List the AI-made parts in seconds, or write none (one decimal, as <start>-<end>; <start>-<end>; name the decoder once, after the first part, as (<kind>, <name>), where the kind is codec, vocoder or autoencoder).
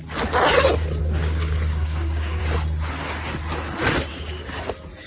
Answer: 1.0-2.4 (codec, DAC); 4.1-4.6